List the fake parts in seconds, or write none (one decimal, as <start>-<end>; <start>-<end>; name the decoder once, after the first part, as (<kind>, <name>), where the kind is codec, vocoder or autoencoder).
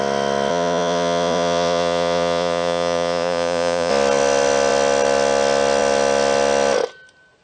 0.5-3.9 (vocoder, Vocos)